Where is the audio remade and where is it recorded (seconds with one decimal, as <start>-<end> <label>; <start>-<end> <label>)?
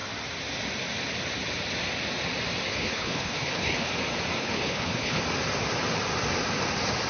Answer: 0.0-2.7 recorded; 2.7-3.9 remade; 3.9-4.4 recorded; 4.4-5.2 remade; 5.2-7.1 recorded